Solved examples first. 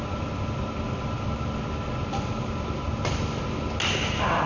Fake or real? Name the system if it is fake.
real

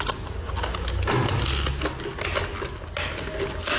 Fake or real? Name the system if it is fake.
real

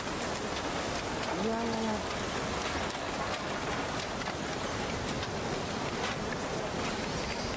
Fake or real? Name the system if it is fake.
real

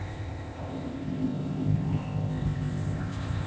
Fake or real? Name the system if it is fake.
fake, codec, ZipCodec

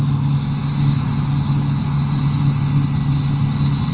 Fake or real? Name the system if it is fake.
real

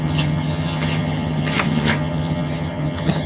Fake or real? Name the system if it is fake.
fake, vocoder, HiFi-GAN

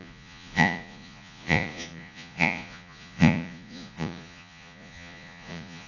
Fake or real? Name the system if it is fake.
fake, vocoder, Vocos